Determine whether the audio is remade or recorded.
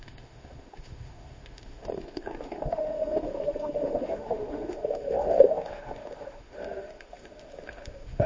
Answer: remade